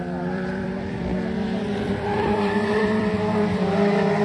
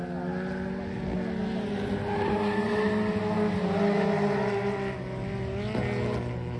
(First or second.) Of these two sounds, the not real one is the first